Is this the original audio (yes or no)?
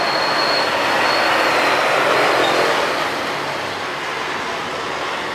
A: yes